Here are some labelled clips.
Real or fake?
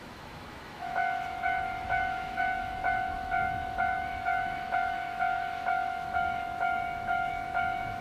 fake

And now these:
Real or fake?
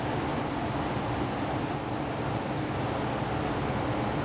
real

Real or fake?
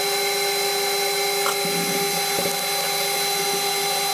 real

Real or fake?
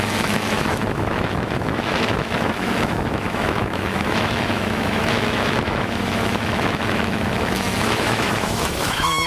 fake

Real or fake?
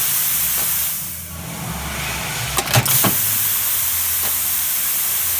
real